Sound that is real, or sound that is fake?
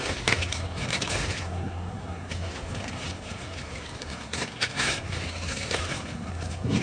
fake